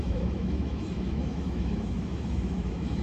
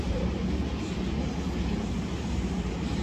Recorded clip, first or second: second